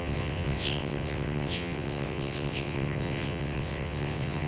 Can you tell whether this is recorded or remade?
remade